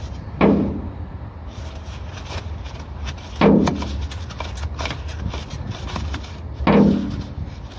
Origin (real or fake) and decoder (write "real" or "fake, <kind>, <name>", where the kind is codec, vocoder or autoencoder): real